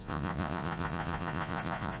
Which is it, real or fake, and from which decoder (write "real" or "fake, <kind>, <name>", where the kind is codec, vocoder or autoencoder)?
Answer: fake, vocoder, Vocos